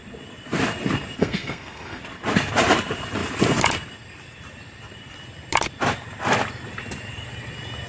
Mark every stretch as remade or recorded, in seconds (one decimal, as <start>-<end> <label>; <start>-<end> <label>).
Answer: 0.0-1.2 recorded; 1.2-2.0 remade; 2.0-7.9 recorded